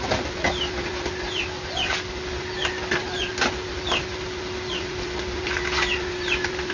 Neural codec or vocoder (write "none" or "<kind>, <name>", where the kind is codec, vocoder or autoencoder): none